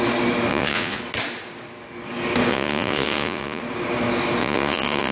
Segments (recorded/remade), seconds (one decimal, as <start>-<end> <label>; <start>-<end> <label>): 0.0-0.5 recorded; 0.5-1.0 remade; 1.0-2.5 recorded; 2.5-3.6 remade; 3.6-4.4 recorded; 4.4-5.1 remade